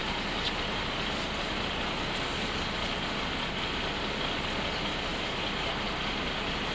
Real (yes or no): yes